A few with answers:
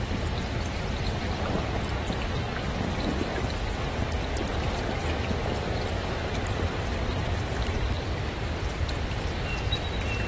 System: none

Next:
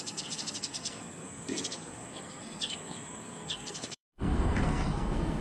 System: codec, SNAC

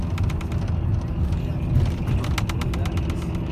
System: none